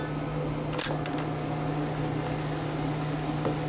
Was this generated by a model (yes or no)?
no